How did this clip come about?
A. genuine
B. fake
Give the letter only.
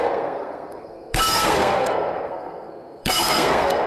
B